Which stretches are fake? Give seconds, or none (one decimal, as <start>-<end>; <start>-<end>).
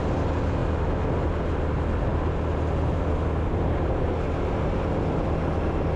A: none